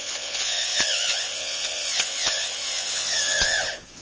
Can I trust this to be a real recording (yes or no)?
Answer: no